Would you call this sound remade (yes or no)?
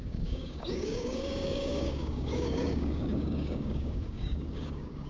yes